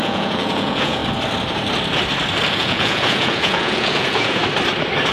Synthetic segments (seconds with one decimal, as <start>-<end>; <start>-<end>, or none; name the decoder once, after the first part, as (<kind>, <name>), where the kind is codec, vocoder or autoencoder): 0.0-1.0 (vocoder, Vocos); 2.5-4.4

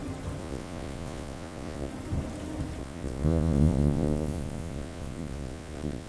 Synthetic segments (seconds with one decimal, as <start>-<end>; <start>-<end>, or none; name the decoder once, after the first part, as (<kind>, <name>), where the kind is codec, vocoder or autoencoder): 0.4-1.9 (vocoder, Vocos); 2.8-6.1